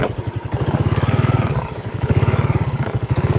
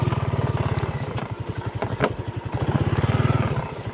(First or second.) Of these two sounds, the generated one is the first